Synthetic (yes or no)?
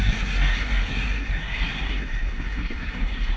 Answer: yes